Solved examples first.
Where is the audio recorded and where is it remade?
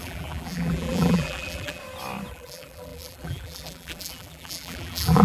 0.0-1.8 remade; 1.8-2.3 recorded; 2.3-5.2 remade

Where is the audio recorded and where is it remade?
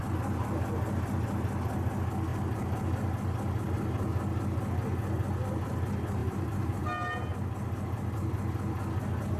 0.0-6.2 recorded; 6.2-6.8 remade; 6.8-9.4 recorded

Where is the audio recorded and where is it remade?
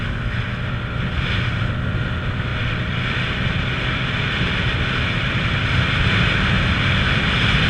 0.0-2.5 recorded; 2.5-5.4 remade; 5.4-7.7 recorded